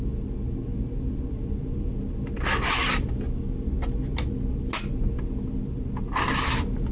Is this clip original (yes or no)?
yes